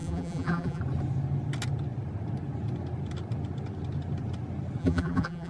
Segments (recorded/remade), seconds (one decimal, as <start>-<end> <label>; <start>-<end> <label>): 0.0-0.8 remade; 0.8-4.8 recorded; 4.8-5.5 remade